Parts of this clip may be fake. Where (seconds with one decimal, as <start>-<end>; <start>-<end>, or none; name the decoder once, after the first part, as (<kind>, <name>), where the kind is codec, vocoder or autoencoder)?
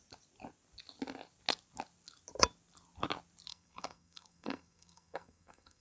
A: 3.5-5.8 (codec, SNAC)